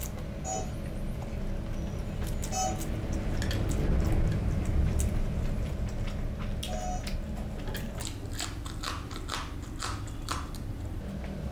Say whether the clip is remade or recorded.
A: recorded